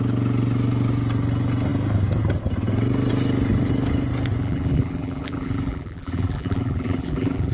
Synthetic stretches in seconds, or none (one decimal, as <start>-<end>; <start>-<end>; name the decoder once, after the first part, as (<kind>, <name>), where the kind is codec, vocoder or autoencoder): 4.4-7.5 (vocoder, BigVGAN v2)

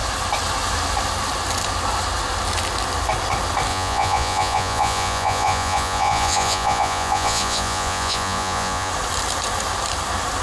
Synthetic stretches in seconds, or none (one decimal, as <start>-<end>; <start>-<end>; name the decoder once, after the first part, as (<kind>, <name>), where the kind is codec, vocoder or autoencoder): 3.7-8.9 (vocoder, Vocos)

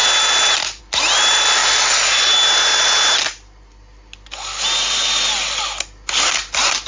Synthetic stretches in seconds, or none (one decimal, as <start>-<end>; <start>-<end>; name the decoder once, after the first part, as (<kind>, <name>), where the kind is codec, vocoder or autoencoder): none

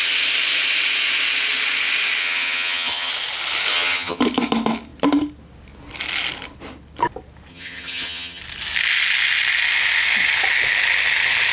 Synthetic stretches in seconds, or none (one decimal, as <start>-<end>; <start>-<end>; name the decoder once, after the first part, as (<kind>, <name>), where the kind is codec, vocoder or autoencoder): 2.2-3.1 (vocoder, HiFi-GAN); 3.7-4.2; 7.5-8.4

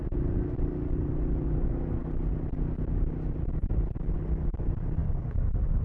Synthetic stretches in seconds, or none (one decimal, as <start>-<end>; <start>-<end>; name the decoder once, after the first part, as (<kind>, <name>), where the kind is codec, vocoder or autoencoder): none